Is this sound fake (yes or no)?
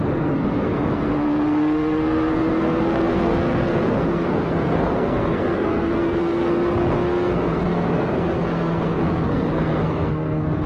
yes